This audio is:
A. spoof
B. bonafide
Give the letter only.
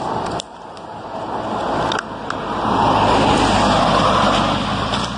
B